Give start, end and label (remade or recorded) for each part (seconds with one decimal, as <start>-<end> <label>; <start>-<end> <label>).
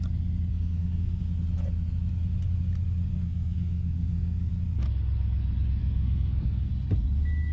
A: 0.0-0.5 recorded; 0.5-1.2 remade; 1.2-3.1 recorded; 3.1-4.5 remade; 4.5-5.8 recorded; 5.8-6.7 remade; 6.7-7.5 recorded